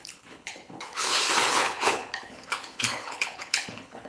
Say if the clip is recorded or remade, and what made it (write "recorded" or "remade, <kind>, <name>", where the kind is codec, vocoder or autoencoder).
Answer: remade, codec, HILCodec